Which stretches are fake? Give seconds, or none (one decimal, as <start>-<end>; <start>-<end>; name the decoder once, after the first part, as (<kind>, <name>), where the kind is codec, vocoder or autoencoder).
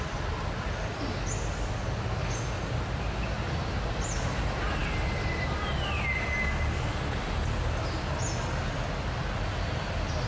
none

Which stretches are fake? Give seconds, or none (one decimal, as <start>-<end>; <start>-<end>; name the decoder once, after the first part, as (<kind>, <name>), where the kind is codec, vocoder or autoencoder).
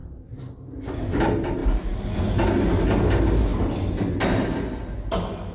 none